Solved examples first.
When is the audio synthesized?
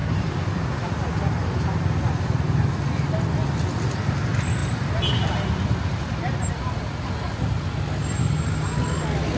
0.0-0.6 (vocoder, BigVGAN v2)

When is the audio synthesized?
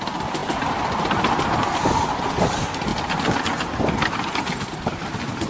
none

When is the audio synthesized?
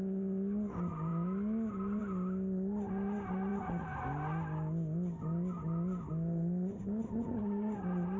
none